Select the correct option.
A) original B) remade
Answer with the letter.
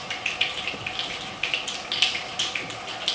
A